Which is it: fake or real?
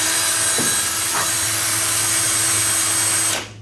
real